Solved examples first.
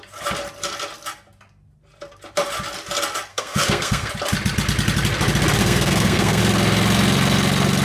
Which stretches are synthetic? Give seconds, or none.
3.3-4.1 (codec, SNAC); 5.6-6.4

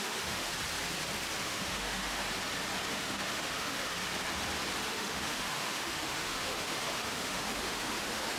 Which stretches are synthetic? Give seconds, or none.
0.0-0.5 (autoencoder, DAC-VAE); 1.4-2.2; 2.9-3.9; 4.9-8.4

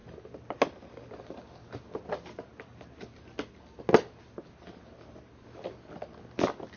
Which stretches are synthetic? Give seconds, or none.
none

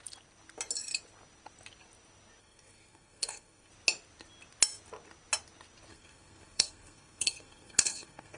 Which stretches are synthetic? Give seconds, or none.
2.4-3.7 (codec, SNAC); 5.9-8.4

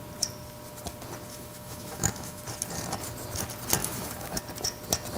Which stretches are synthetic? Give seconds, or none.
1.3-2.4 (autoencoder, DAC-VAE); 3.8-4.4